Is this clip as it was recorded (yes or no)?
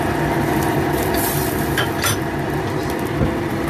no